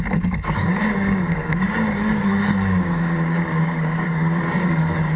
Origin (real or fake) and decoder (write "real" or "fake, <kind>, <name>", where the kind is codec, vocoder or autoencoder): fake, codec, DAC